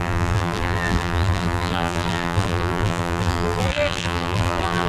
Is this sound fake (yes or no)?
yes